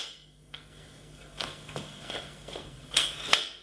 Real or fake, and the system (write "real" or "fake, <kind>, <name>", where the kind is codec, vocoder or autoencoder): fake, codec, SNAC